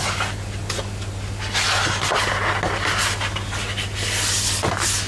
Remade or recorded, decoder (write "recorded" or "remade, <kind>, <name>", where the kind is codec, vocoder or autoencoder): recorded